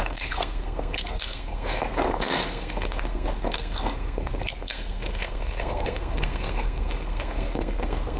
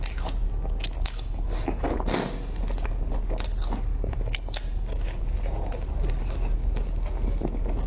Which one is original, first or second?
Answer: second